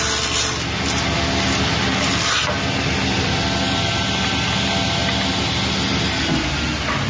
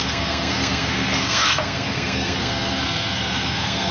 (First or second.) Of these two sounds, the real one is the first